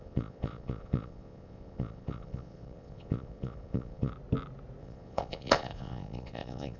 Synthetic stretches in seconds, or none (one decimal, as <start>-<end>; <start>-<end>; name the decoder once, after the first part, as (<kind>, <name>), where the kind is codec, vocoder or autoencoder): 0.0-4.1 (vocoder, Vocos); 4.8-6.8